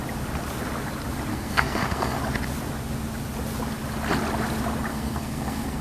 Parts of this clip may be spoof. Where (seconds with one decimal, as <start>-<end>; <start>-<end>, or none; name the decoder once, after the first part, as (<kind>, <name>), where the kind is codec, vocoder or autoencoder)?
1.3-2.2 (codec, SNAC); 4.9-5.8